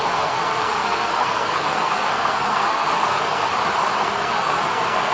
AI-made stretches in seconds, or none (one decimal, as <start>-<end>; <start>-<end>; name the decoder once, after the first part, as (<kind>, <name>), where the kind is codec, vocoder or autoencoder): 0.0-3.5 (codec, SNAC); 4.0-5.1